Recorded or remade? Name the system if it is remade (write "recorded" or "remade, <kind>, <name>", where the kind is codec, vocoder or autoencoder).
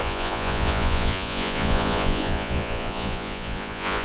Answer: remade, vocoder, Vocos